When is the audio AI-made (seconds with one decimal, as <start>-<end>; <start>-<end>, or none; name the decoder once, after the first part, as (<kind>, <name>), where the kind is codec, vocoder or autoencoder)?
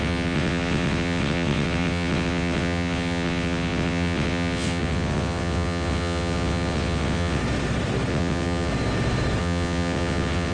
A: 0.0-7.4 (vocoder, WaveNeXt); 8.1-8.7; 9.4-10.5